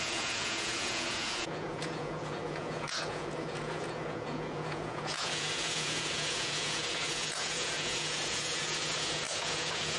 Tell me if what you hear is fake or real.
fake